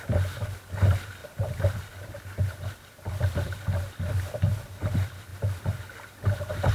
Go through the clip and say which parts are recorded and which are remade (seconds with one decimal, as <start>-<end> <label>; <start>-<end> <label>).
0.0-6.7 recorded